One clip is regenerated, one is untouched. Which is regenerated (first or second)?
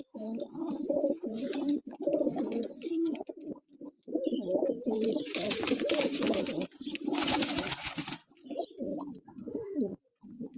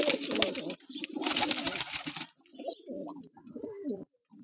first